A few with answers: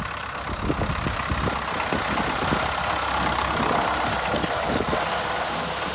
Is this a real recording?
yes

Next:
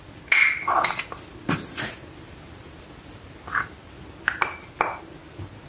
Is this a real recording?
yes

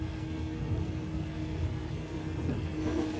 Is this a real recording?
no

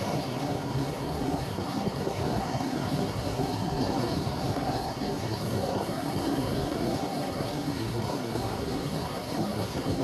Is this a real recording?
no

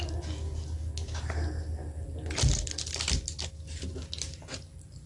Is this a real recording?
yes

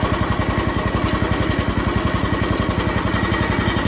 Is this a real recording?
yes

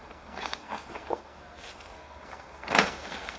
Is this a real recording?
no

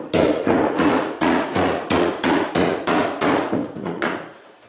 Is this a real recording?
no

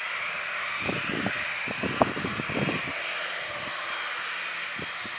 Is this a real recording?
yes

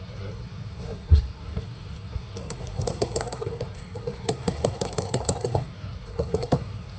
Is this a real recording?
no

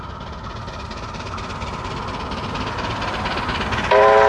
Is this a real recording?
yes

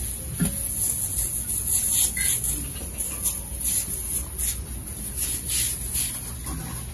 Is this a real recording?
yes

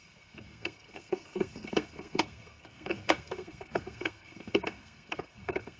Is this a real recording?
no